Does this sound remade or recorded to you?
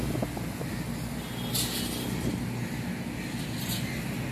recorded